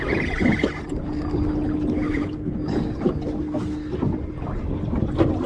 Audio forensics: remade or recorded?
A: recorded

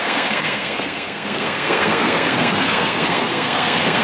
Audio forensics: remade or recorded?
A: remade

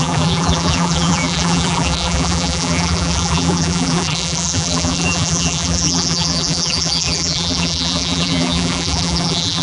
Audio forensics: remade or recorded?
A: remade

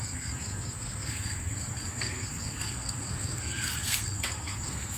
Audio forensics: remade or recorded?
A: remade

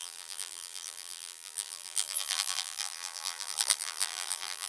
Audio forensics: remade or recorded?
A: remade